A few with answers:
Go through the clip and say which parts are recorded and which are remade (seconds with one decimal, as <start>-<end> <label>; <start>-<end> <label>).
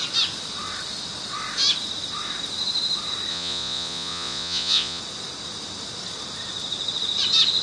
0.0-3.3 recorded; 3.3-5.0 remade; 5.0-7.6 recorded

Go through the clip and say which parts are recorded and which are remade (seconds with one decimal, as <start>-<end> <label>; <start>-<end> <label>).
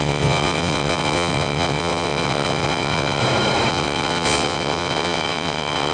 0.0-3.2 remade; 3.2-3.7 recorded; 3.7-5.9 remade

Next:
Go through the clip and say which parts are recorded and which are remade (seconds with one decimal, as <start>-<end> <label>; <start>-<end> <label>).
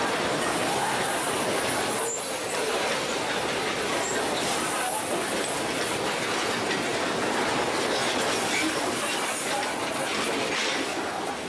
0.0-11.5 recorded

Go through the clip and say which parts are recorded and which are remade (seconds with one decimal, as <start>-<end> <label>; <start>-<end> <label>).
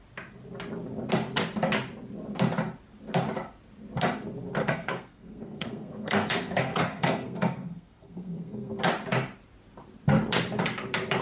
0.0-4.6 recorded; 4.6-8.8 remade; 8.8-11.2 recorded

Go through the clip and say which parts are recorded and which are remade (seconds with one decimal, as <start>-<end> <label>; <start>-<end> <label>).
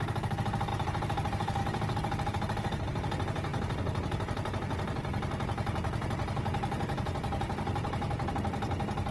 0.0-9.1 recorded